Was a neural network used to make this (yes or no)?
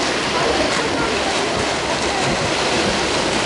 no